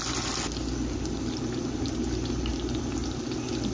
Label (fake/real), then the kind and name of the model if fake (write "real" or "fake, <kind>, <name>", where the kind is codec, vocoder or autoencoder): real